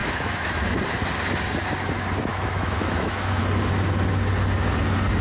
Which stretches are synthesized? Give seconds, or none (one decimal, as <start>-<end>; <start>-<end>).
0.0-0.8; 2.3-3.4